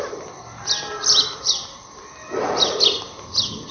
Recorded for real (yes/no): no